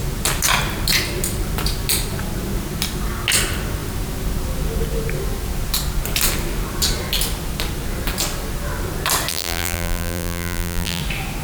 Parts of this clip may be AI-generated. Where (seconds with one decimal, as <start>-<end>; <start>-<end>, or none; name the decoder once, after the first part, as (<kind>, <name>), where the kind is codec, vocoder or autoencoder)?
9.3-11.0 (vocoder, BigVGAN v2)